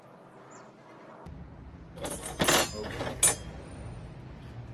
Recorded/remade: recorded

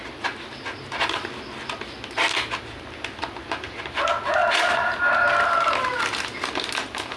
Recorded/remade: recorded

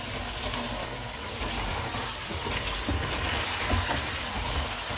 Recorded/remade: recorded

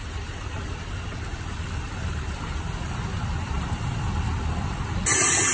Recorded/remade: recorded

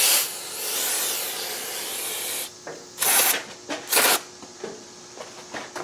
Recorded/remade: recorded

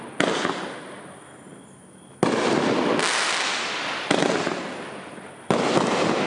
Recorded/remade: recorded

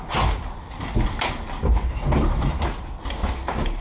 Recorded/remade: recorded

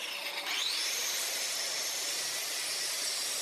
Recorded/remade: recorded